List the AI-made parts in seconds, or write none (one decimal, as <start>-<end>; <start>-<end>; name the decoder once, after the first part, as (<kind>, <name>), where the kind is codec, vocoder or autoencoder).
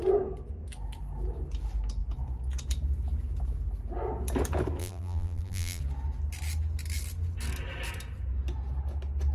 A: 4.8-5.8 (vocoder, BigVGAN v2)